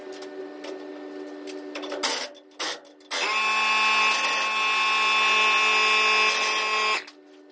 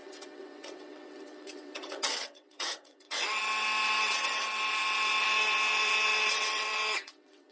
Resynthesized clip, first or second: second